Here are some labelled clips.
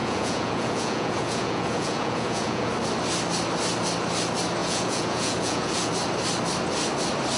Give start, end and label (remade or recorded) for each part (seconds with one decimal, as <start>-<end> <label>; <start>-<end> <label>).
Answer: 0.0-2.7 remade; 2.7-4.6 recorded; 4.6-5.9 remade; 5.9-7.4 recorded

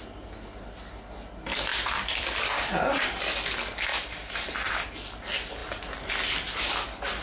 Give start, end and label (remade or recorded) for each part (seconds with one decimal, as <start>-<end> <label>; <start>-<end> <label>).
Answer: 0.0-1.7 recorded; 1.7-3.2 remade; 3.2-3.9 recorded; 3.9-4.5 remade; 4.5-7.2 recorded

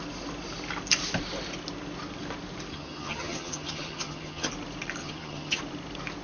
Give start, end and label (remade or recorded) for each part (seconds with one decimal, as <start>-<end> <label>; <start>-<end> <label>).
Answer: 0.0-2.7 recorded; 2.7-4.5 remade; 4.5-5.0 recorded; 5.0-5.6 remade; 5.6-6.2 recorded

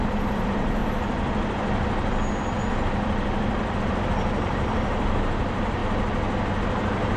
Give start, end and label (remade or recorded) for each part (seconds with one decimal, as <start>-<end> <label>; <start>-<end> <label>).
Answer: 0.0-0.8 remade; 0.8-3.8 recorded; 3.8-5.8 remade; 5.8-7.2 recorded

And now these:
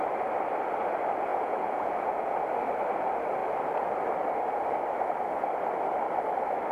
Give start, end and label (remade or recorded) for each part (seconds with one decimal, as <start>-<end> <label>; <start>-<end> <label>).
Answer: 0.0-1.3 recorded; 1.3-2.4 remade; 2.4-6.7 recorded

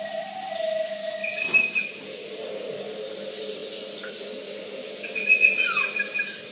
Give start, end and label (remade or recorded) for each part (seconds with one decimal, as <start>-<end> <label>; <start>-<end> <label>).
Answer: 0.0-1.2 recorded; 1.2-1.8 remade; 1.8-6.5 recorded

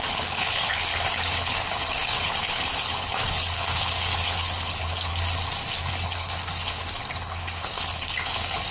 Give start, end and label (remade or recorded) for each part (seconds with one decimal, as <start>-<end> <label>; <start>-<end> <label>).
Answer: 0.0-5.1 remade; 5.1-5.9 recorded; 5.9-8.7 remade

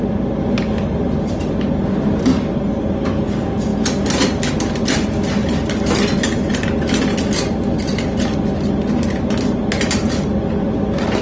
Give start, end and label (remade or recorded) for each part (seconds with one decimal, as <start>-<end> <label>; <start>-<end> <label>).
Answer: 0.0-11.2 recorded